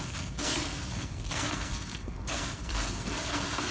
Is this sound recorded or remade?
remade